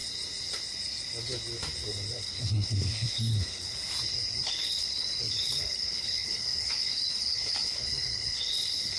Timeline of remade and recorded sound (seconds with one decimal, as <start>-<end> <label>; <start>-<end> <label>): 0.0-2.1 recorded; 2.1-3.8 remade; 3.8-4.4 recorded; 4.4-9.0 remade